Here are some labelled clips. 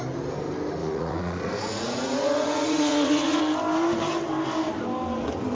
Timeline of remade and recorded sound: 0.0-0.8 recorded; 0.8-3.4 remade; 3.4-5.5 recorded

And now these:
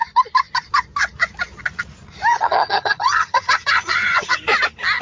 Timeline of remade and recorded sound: 0.0-2.3 recorded; 2.3-4.4 remade; 4.4-5.0 recorded

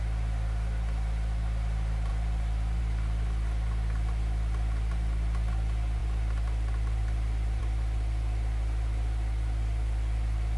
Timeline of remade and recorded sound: 0.0-10.6 recorded

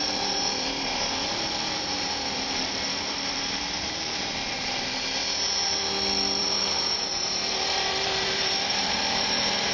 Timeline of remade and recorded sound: 0.0-5.2 remade; 5.2-6.4 recorded; 6.4-9.7 remade

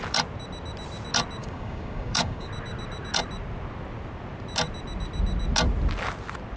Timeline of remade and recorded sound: 0.0-1.4 recorded; 1.4-2.5 remade; 2.5-6.6 recorded